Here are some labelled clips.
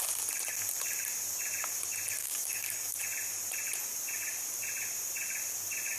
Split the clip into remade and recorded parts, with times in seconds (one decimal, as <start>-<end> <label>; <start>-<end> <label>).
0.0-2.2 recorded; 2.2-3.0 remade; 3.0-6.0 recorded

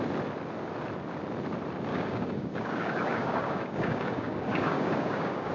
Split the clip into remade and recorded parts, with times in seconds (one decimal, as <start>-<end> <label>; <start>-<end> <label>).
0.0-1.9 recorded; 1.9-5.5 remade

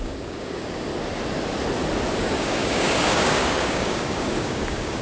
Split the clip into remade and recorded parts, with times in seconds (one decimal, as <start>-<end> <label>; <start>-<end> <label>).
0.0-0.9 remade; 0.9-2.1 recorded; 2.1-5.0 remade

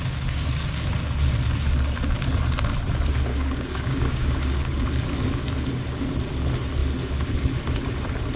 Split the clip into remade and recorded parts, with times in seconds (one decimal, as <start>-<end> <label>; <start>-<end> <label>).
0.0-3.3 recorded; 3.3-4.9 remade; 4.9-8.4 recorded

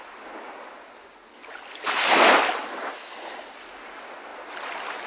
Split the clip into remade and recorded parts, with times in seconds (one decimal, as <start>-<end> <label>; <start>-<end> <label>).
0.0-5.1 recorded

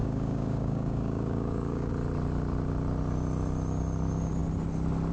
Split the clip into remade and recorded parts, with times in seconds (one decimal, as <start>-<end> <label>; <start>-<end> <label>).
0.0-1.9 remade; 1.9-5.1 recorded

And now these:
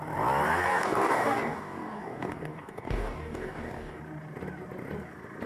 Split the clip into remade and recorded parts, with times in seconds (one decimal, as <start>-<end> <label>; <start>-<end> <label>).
0.0-0.7 recorded; 0.7-4.0 remade; 4.0-5.5 recorded

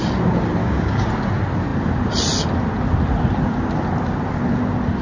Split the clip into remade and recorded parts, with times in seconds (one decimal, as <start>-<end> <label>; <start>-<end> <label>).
0.0-0.6 recorded; 0.6-1.1 remade; 1.1-5.0 recorded